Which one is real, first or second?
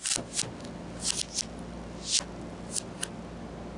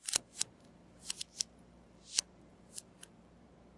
first